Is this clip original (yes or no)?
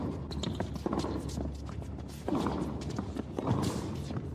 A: yes